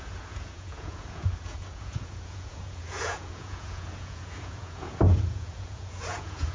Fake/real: fake